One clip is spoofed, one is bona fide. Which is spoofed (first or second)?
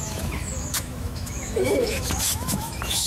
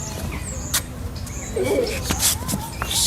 first